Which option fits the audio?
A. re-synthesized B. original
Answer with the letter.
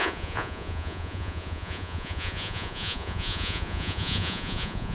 A